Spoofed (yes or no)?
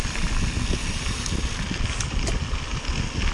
no